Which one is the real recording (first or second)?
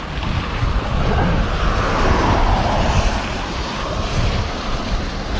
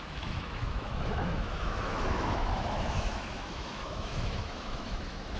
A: first